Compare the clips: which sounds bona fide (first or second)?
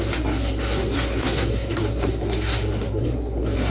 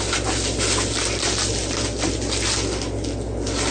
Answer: second